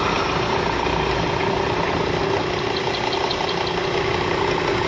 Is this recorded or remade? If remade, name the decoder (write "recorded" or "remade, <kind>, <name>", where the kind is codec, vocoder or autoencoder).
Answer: recorded